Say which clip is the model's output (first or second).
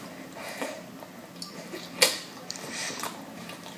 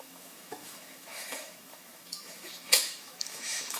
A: second